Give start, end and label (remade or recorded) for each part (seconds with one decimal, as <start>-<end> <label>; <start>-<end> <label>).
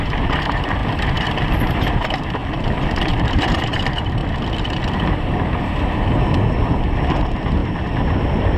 0.0-2.4 remade; 2.4-3.1 recorded; 3.1-4.2 remade; 4.2-5.1 recorded; 5.1-8.6 remade